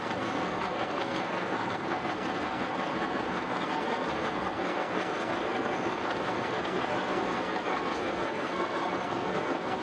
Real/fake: fake